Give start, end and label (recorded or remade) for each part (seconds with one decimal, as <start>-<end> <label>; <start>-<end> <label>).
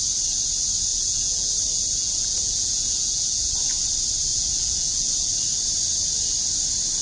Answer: 0.0-0.9 recorded; 0.9-1.5 remade; 1.5-2.0 recorded; 2.0-3.5 remade; 3.5-4.3 recorded; 4.3-5.3 remade; 5.3-7.0 recorded